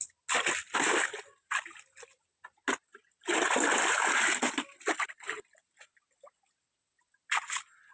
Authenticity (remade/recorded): recorded